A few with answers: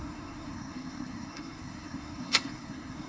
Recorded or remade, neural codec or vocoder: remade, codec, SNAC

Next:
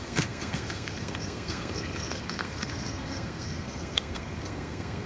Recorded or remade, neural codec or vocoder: remade, codec, SNAC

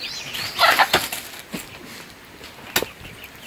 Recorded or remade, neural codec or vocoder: recorded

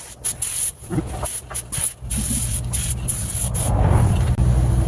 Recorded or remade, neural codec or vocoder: recorded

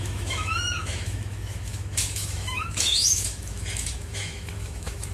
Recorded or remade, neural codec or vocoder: remade, autoencoder, DAC-VAE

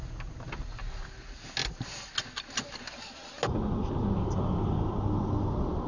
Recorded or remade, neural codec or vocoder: recorded